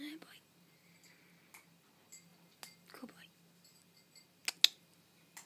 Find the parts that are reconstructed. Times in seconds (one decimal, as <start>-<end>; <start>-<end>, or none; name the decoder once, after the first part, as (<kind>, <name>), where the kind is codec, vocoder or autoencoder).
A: none